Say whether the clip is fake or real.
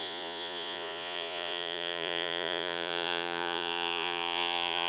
fake